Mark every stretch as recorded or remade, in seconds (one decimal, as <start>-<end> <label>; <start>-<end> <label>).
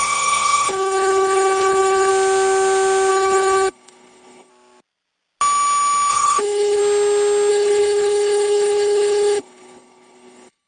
0.0-2.1 remade; 2.1-3.1 recorded; 3.1-4.5 remade; 4.5-6.1 recorded; 6.1-6.8 remade; 6.8-7.5 recorded; 7.5-10.7 remade